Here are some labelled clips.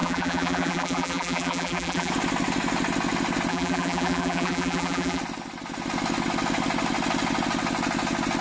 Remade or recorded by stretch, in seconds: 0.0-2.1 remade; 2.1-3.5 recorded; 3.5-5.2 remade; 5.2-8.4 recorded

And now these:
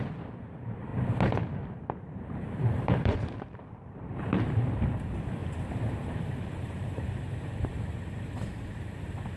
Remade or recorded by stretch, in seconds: 0.0-0.9 remade; 0.9-2.2 recorded; 2.2-9.4 remade

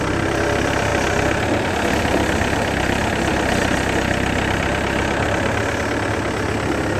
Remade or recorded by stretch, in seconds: 0.0-7.0 recorded

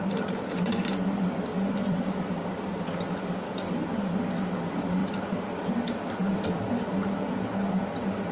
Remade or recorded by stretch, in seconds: 0.0-1.5 recorded; 1.5-4.2 remade; 4.2-5.0 recorded; 5.0-5.7 remade; 5.7-6.2 recorded; 6.2-6.9 remade; 6.9-8.3 recorded

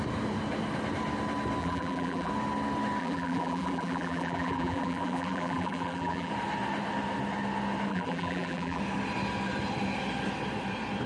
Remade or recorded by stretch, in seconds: 0.0-1.6 recorded; 1.6-2.3 remade; 2.3-3.0 recorded; 3.0-6.3 remade; 6.3-7.9 recorded; 7.9-8.8 remade; 8.8-11.1 recorded